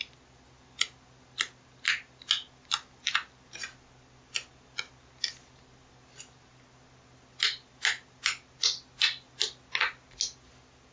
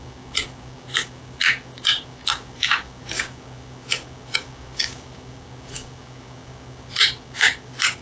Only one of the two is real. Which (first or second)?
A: first